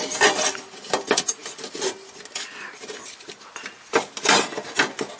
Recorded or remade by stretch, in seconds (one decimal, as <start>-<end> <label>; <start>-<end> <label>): 0.0-5.2 recorded